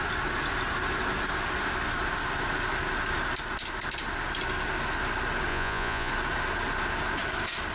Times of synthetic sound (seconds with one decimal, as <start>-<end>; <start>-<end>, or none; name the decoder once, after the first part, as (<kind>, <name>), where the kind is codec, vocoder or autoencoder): 5.5-6.1 (vocoder, Vocos)